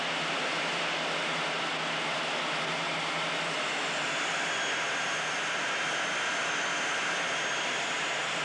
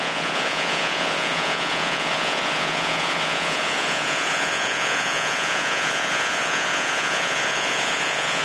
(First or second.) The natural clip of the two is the first